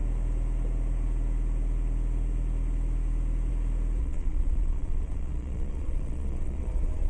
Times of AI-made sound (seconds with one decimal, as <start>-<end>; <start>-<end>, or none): 4.0-7.1